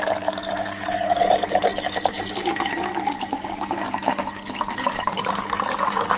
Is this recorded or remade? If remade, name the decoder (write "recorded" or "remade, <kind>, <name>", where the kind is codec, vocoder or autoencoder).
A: remade, codec, DAC